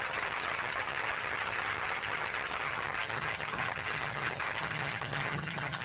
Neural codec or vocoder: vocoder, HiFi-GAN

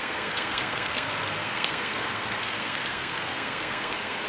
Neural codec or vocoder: codec, SNAC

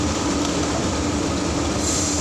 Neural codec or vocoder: none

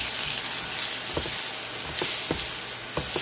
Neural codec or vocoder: none